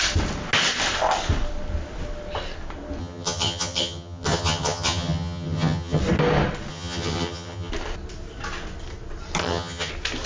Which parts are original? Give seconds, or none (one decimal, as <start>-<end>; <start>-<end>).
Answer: 0.0-3.0; 6.0-6.7; 7.7-9.4; 9.9-10.3